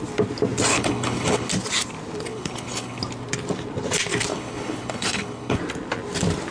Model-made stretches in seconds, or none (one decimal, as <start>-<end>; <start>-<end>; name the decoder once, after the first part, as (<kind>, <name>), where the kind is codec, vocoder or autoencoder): 0.7-1.5 (codec, HILCodec); 2.3-3.0; 4.3-5.6